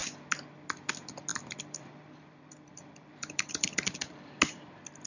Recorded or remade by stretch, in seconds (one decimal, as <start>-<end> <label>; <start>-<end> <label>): 0.0-1.3 recorded; 1.3-4.4 remade; 4.4-5.1 recorded